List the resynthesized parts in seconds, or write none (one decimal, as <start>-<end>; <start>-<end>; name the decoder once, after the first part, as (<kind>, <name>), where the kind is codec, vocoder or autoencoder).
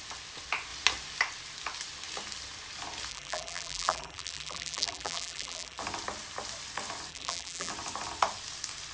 3.1-5.8 (vocoder, BigVGAN v2); 7.1-7.7